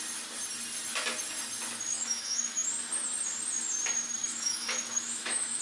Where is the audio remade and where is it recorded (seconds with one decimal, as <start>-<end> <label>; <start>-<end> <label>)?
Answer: 0.0-1.9 recorded; 1.9-2.7 remade; 2.7-4.2 recorded; 4.2-5.6 remade